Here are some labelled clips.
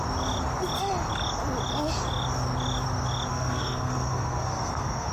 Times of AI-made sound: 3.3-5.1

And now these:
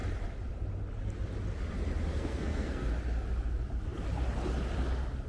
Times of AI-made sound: 2.1-2.9

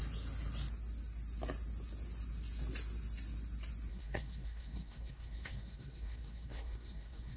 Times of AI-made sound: 3.9-7.4

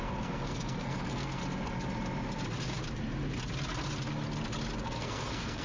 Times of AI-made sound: 0.0-1.4; 4.8-5.6

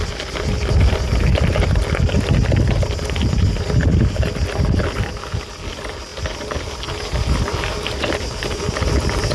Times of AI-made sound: none

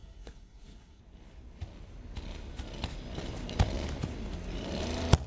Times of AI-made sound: 0.0-1.0

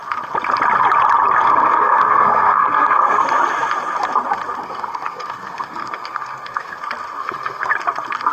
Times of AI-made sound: 1.4-3.2; 4.6-6.8; 7.2-7.7

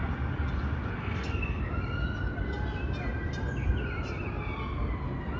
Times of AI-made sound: 1.0-1.6